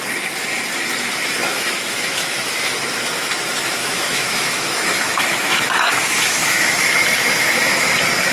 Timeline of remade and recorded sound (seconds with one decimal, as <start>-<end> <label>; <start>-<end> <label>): 0.0-1.5 recorded; 1.5-2.5 remade; 2.5-3.8 recorded; 3.8-7.9 remade; 7.9-8.3 recorded